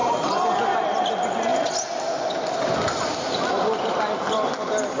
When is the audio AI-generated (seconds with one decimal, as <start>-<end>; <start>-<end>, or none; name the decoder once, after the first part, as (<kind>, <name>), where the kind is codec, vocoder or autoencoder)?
0.0-0.8 (vocoder, BigVGAN v2)